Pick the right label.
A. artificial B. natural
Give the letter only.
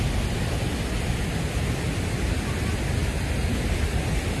B